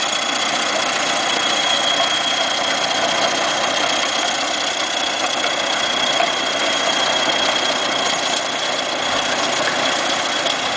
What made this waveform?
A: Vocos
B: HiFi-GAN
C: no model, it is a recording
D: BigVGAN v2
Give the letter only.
C